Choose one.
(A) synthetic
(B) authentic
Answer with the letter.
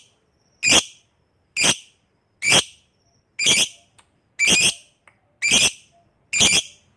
B